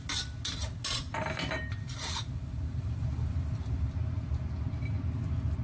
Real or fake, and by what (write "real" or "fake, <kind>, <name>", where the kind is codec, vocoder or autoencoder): real